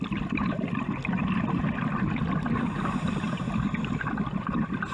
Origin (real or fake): real